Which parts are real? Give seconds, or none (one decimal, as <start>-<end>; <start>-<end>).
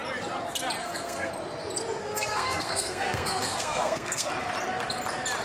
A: 0.0-0.8; 1.3-2.0; 4.3-5.4